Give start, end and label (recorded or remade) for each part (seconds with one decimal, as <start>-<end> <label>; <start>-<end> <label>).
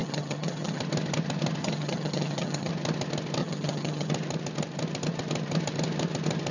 0.0-0.8 remade; 0.8-1.6 recorded; 1.6-2.7 remade; 2.7-3.4 recorded; 3.4-4.1 remade; 4.1-6.5 recorded